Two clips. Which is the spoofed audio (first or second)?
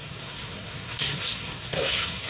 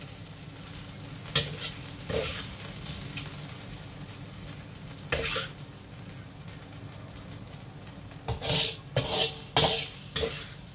first